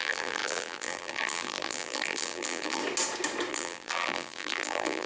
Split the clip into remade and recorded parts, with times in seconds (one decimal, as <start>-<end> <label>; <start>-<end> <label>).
0.0-2.8 remade; 2.8-3.5 recorded; 3.5-5.1 remade